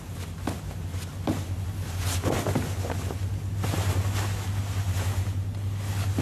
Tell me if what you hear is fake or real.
real